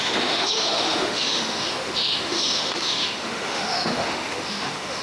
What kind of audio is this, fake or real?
fake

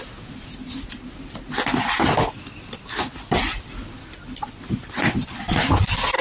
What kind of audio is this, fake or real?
real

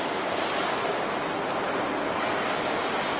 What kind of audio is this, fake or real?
real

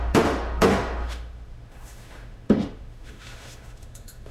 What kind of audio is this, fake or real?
fake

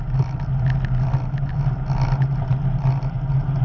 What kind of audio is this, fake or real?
real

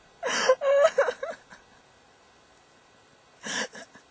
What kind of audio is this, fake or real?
real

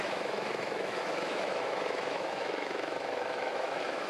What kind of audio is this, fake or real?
fake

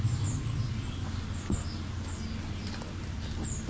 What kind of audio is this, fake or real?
real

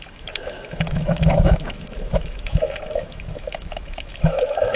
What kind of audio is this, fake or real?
fake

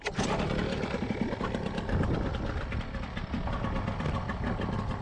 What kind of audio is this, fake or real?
real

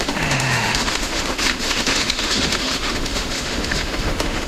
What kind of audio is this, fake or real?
fake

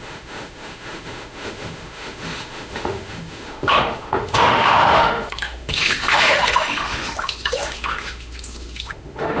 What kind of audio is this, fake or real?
fake